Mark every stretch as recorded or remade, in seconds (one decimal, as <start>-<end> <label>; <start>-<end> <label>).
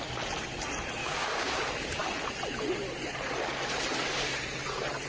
0.0-1.0 recorded; 1.0-1.6 remade; 1.6-5.1 recorded